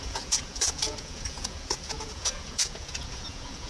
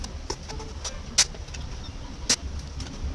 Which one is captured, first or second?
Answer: second